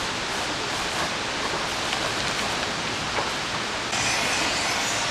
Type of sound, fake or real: real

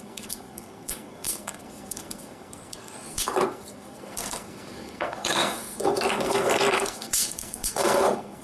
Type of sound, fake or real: fake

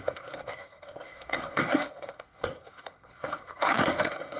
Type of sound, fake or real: fake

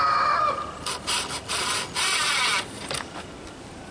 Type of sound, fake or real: real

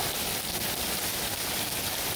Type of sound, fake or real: real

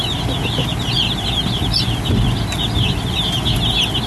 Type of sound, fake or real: real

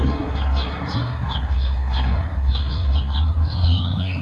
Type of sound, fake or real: fake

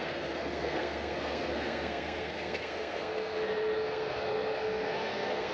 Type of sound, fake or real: fake